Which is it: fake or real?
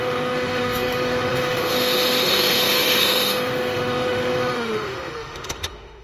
fake